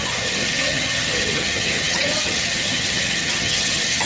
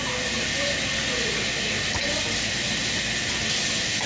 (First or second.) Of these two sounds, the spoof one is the first